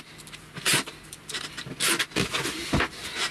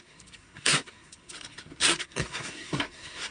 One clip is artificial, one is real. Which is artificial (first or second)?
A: second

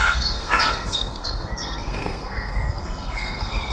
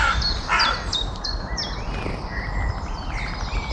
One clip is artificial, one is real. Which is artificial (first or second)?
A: first